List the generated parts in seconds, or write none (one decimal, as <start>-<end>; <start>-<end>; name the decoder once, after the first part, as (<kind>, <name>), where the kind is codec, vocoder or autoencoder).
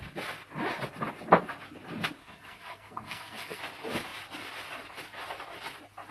2.2-3.6 (codec, SNAC)